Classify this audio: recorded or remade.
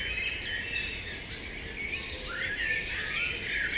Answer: recorded